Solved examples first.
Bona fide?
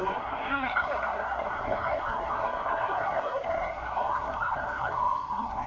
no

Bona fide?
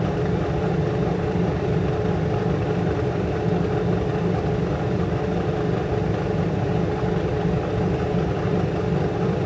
no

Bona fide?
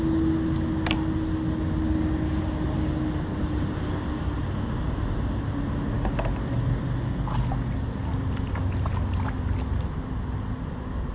yes